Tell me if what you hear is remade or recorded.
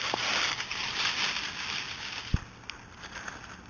recorded